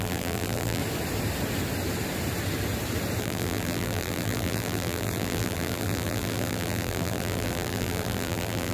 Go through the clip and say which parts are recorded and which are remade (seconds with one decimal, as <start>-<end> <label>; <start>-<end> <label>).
0.0-0.8 remade; 0.8-3.2 recorded; 3.2-8.7 remade